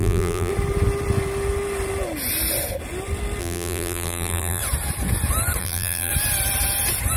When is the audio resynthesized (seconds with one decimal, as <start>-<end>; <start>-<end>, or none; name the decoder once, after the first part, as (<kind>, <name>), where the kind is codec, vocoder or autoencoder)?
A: 0.0-0.5 (vocoder, BigVGAN v2); 3.4-4.6; 5.6-6.1